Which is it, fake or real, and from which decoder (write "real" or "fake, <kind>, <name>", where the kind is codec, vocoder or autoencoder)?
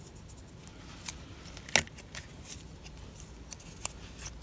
real